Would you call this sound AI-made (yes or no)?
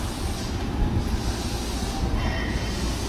no